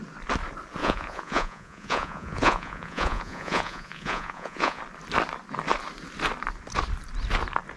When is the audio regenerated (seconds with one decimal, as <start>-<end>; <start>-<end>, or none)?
0.8-4.8